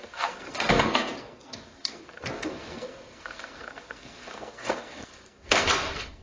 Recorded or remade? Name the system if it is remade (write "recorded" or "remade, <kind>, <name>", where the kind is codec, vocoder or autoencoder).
remade, codec, SNAC